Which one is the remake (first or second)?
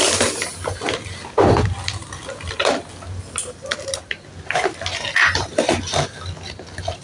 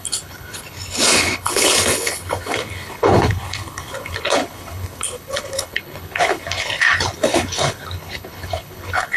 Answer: second